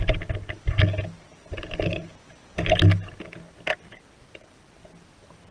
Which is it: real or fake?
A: real